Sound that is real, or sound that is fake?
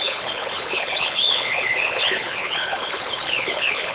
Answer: fake